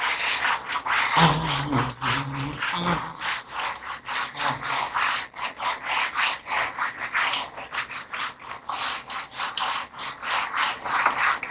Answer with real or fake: real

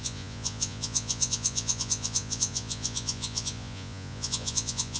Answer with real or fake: fake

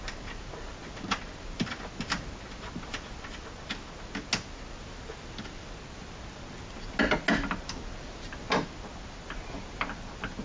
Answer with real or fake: real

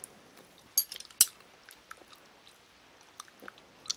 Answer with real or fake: real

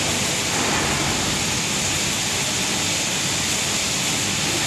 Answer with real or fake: real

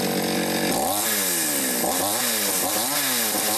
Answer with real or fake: real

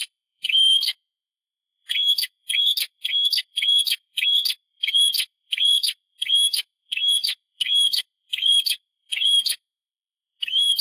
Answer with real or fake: fake